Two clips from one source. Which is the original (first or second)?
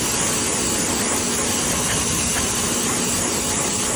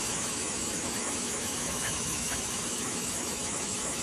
first